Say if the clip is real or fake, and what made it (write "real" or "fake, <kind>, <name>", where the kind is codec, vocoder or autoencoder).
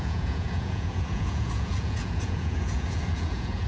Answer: fake, vocoder, Vocos